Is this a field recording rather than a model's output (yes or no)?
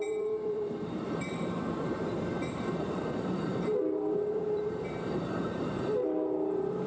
no